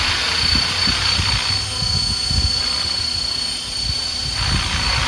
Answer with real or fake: real